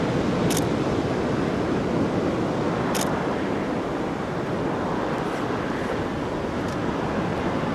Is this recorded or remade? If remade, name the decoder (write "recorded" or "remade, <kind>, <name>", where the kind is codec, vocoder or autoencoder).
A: recorded